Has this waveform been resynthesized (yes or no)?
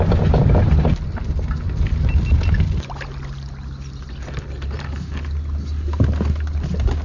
no